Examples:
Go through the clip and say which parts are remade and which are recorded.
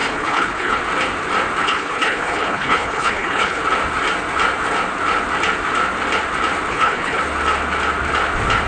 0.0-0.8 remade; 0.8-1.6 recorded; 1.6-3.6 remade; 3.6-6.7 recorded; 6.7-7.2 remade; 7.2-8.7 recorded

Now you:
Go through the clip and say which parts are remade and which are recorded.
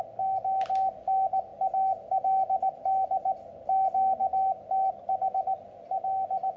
0.0-6.6 recorded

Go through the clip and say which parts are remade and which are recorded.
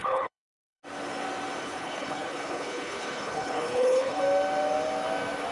0.0-0.8 remade; 0.8-1.6 recorded; 1.6-4.2 remade; 4.2-5.5 recorded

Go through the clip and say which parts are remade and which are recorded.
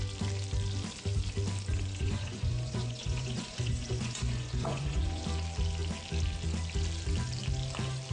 0.0-1.7 recorded; 1.7-5.2 remade; 5.2-8.1 recorded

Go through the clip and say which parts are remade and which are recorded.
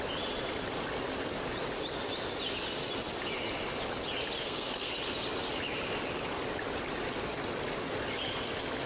0.0-4.4 recorded; 4.4-4.9 remade; 4.9-8.9 recorded